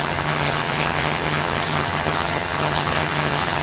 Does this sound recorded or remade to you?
remade